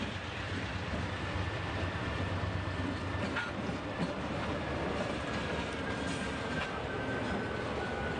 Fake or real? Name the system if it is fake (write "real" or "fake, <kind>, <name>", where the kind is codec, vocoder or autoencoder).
fake, vocoder, BigVGAN v2